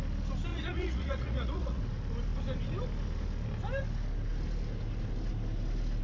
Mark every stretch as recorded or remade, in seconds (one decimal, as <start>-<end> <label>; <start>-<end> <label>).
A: 0.0-0.5 recorded; 0.5-1.8 remade; 1.8-6.0 recorded